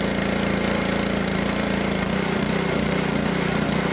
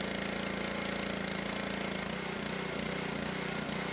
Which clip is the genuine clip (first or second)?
second